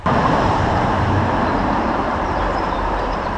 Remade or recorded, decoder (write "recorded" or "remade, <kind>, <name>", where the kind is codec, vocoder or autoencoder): remade, vocoder, BigVGAN v2